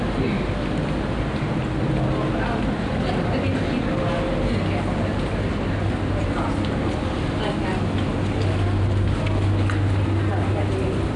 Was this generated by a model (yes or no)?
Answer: no